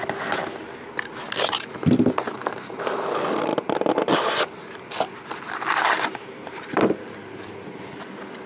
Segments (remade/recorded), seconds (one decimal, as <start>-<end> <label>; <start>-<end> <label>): 0.0-8.5 recorded